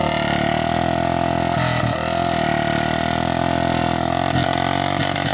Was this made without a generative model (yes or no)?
yes